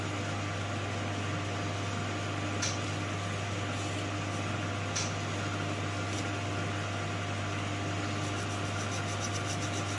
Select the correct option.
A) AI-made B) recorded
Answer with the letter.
B